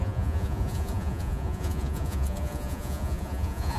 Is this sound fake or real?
fake